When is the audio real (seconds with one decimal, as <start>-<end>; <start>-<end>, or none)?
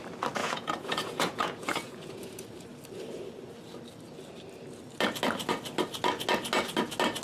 0.0-0.4; 2.3-7.2